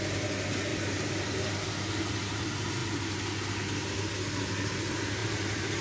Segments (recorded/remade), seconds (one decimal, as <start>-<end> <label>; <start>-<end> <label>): 0.0-0.7 recorded; 0.7-1.3 remade; 1.3-5.2 recorded; 5.2-5.8 remade